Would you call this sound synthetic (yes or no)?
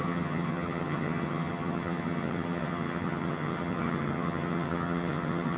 yes